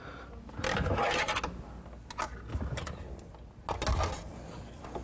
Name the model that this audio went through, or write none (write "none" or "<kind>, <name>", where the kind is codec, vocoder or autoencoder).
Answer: none